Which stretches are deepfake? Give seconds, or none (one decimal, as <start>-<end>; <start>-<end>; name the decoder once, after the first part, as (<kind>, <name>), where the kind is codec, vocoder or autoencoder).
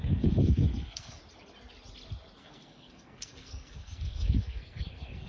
0.0-1.2 (codec, SNAC); 2.4-5.3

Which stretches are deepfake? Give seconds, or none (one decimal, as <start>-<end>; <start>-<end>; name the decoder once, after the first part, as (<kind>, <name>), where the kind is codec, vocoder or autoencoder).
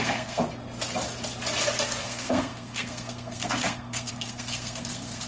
0.0-0.4 (codec, SNAC); 2.0-5.3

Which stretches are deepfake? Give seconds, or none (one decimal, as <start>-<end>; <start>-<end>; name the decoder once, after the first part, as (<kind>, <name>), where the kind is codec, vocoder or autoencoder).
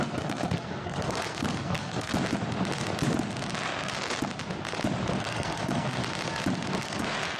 0.0-2.1 (codec, SNAC); 5.2-6.0; 6.8-7.4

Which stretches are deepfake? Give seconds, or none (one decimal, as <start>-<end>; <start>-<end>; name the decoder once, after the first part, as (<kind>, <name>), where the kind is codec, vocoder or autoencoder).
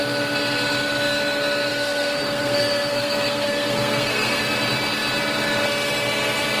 1.7-4.4 (codec, SNAC)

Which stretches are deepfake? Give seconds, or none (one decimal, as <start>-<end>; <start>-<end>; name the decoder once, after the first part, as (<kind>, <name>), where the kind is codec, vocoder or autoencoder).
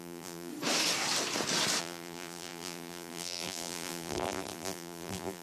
0.0-0.5 (vocoder, BigVGAN v2); 1.8-5.4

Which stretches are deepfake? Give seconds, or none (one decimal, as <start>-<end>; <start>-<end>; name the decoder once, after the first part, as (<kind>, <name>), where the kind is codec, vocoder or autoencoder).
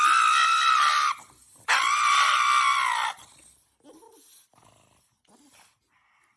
none